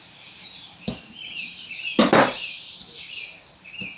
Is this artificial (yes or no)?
yes